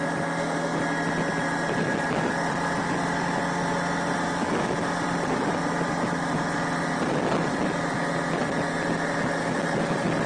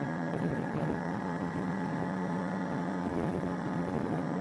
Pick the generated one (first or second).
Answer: second